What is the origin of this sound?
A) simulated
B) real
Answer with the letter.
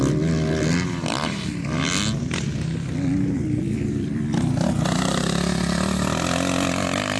B